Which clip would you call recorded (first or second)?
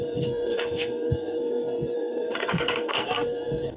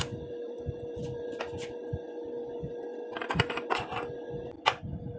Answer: second